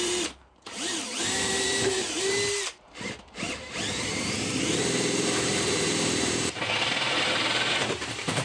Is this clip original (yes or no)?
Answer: no